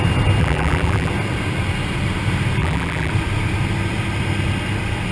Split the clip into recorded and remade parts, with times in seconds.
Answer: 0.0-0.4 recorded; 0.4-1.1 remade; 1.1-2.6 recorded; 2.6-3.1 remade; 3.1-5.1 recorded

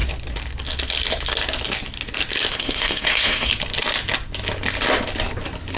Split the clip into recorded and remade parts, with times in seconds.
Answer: 0.0-2.5 recorded; 2.5-3.5 remade; 3.5-5.8 recorded

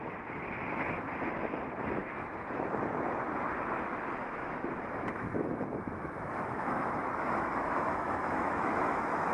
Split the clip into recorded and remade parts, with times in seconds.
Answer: 0.0-2.0 recorded; 2.0-2.7 remade; 2.7-4.2 recorded; 4.2-9.3 remade

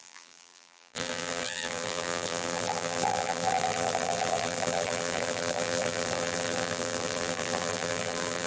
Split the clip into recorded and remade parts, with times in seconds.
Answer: 0.0-8.5 remade